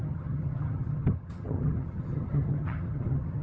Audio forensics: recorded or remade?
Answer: remade